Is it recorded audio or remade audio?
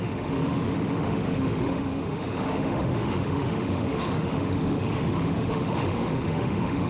remade